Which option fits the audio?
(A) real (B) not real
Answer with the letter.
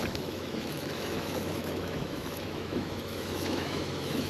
B